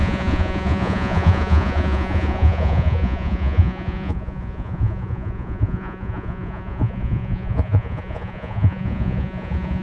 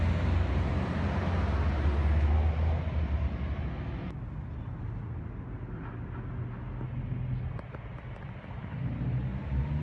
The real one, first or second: second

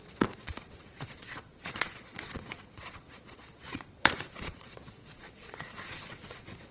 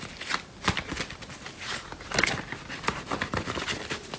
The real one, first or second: second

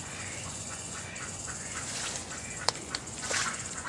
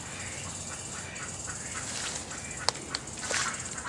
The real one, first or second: second